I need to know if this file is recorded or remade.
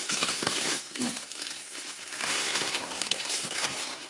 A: remade